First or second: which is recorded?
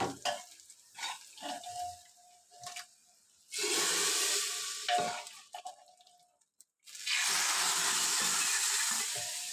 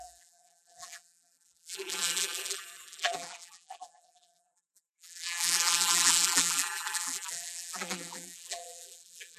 first